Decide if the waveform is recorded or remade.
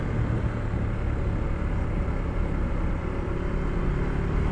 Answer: recorded